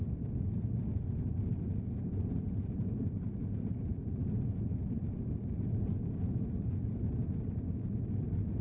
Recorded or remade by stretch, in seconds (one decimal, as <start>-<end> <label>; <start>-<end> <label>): 0.0-3.4 recorded; 3.4-3.9 remade; 3.9-8.6 recorded